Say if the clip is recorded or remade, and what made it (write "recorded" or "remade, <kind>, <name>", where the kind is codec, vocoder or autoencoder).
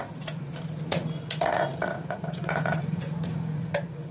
remade, vocoder, Vocos